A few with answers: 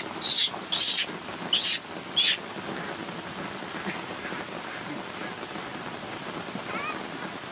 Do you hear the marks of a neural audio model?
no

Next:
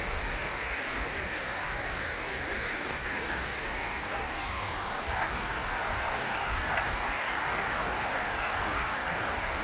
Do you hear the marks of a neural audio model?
yes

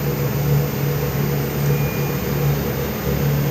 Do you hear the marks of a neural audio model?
no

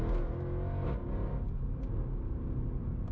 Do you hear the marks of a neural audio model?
no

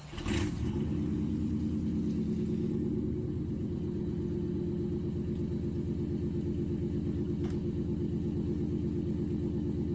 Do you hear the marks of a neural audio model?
no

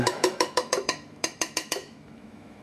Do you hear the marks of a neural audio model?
yes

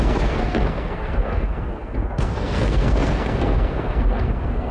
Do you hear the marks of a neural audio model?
yes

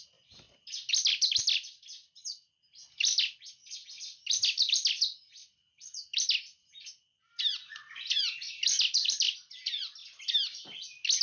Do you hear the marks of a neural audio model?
no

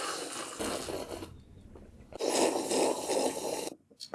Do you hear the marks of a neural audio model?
no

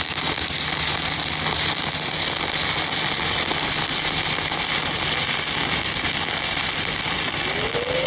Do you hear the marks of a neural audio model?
no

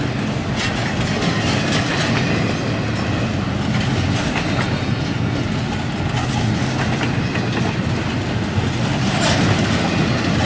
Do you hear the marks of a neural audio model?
no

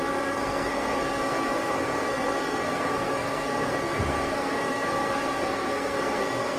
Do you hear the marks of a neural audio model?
yes